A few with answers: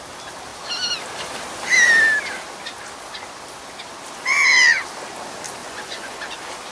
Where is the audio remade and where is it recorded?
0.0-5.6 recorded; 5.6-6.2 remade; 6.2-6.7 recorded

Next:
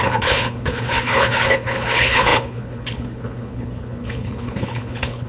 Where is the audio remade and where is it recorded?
0.0-5.3 remade

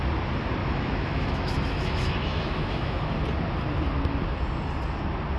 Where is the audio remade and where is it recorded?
0.0-0.6 recorded; 0.6-3.1 remade; 3.1-5.4 recorded

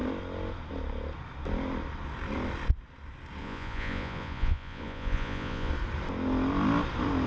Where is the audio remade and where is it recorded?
0.0-3.4 recorded; 3.4-5.7 remade; 5.7-7.3 recorded

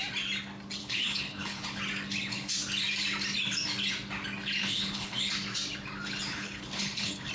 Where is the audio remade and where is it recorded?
0.0-0.8 recorded; 0.8-1.6 remade; 1.6-4.6 recorded; 4.6-5.2 remade; 5.2-6.3 recorded; 6.3-7.3 remade

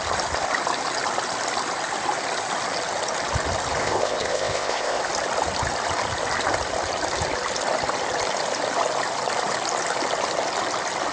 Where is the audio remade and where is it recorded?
0.0-3.8 recorded; 3.8-5.0 remade; 5.0-11.1 recorded

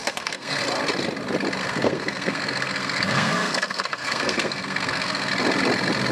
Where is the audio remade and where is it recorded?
0.0-0.6 remade; 0.6-1.6 recorded; 1.6-5.3 remade; 5.3-6.1 recorded

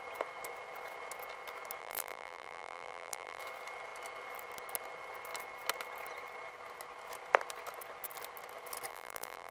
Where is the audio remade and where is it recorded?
0.0-1.8 recorded; 1.8-3.4 remade; 3.4-8.9 recorded; 8.9-9.5 remade